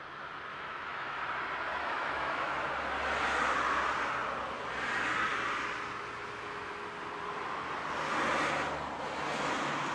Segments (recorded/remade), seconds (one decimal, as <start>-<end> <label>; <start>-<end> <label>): 0.0-0.5 recorded; 0.5-1.2 remade; 1.2-1.7 recorded; 1.7-2.7 remade; 2.7-9.9 recorded